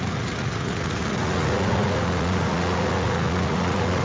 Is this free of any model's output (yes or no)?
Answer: no